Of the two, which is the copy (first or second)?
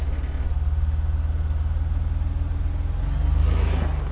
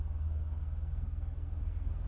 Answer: second